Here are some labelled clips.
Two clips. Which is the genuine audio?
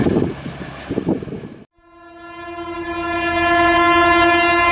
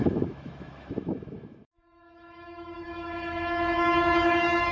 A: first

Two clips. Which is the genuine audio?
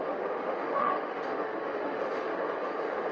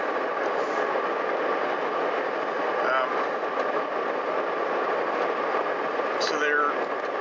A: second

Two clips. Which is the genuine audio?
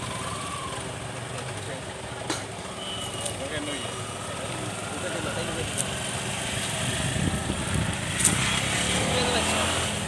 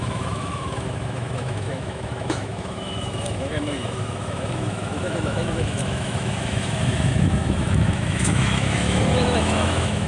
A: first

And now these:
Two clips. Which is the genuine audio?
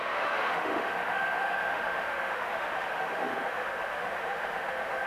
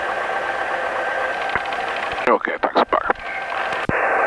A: second